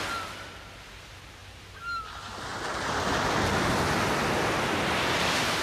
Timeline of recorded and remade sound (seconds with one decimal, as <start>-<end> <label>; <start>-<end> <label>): 0.0-1.4 recorded; 1.4-2.0 remade; 2.0-2.5 recorded; 2.5-3.7 remade; 3.7-5.6 recorded